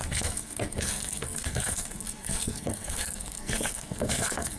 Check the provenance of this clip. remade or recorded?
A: remade